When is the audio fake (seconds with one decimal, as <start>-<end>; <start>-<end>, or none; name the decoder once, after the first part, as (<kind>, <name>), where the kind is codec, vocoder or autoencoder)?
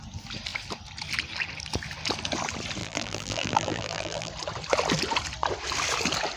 2.8-4.3 (vocoder, BigVGAN v2)